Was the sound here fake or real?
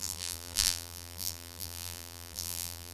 fake